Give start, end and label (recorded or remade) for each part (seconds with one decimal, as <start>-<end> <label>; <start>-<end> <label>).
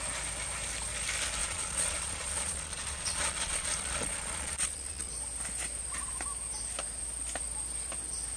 0.0-1.4 recorded; 1.4-5.1 remade; 5.1-8.4 recorded